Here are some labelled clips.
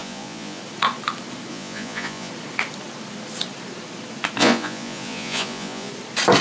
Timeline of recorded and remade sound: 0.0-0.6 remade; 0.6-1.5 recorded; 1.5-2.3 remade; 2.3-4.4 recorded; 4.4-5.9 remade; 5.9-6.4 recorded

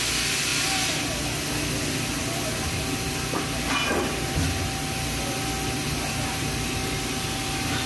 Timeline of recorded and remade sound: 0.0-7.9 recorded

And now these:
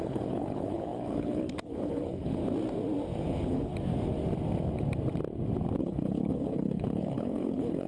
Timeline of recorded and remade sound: 0.0-2.4 remade; 2.4-3.2 recorded; 3.2-3.7 remade; 3.7-5.8 recorded; 5.8-7.9 remade